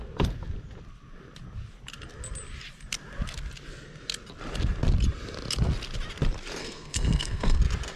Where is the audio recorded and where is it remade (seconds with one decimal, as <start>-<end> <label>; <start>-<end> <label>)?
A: 0.0-6.6 recorded; 6.6-7.6 remade; 7.6-8.0 recorded